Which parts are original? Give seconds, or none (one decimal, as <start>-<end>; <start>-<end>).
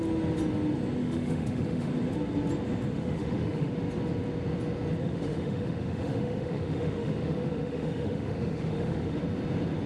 0.0-1.0; 1.9-2.9; 3.7-5.0; 9.2-9.9